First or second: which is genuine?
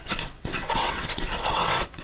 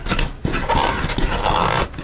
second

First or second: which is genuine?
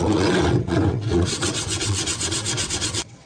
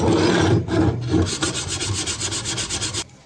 second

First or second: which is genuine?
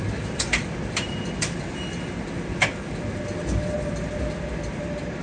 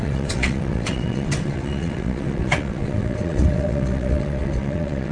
first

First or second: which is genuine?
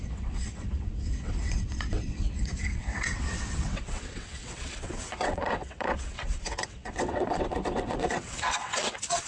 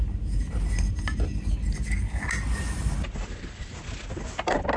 second